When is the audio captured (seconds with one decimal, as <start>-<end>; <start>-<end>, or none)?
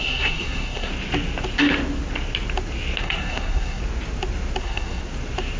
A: 0.9-3.0; 3.8-4.6; 5.0-5.6